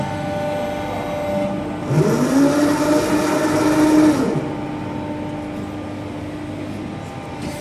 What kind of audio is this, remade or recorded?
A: recorded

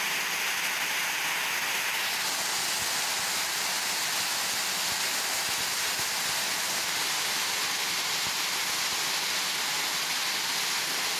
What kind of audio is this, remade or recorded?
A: recorded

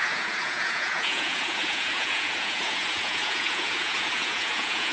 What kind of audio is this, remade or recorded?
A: remade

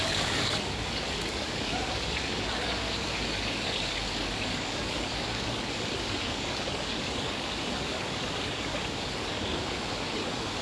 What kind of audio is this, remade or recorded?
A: remade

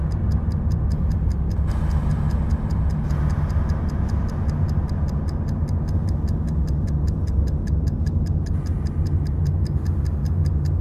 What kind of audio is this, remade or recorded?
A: recorded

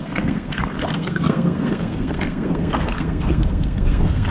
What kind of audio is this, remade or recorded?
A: remade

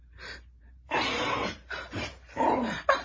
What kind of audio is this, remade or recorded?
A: remade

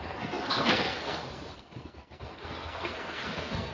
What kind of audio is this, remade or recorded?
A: remade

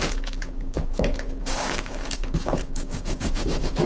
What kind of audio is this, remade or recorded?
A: remade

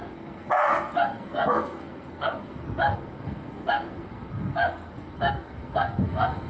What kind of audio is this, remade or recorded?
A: remade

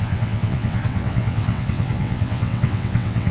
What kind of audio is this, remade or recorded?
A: remade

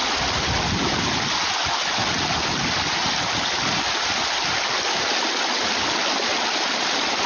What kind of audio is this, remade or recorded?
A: recorded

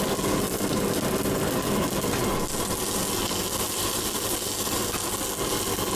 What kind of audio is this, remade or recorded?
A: recorded